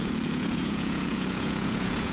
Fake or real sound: fake